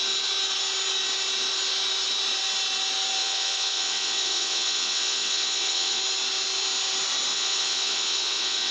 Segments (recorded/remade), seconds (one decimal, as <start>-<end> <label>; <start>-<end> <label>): 0.0-3.2 recorded; 3.2-6.0 remade; 6.0-7.3 recorded; 7.3-8.7 remade